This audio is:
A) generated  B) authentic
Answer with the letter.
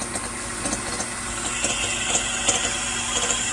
B